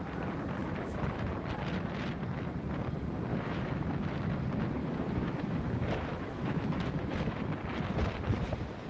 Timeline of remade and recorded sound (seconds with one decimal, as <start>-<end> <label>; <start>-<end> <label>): 0.0-0.6 recorded; 0.6-1.3 remade; 1.3-3.3 recorded; 3.3-3.9 remade; 3.9-4.8 recorded; 4.8-7.4 remade; 7.4-8.9 recorded